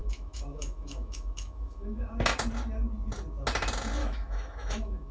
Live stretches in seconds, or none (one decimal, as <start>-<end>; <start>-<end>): 2.1-4.0